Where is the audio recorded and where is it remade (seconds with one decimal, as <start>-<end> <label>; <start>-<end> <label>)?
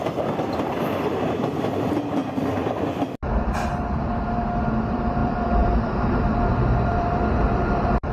0.0-2.2 remade; 2.2-2.9 recorded; 2.9-8.1 remade